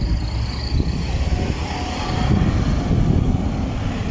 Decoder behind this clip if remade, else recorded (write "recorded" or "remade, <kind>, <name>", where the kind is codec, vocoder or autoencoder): recorded